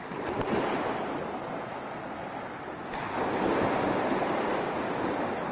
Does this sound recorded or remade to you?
recorded